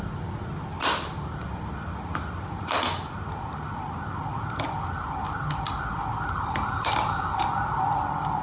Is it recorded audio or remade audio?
recorded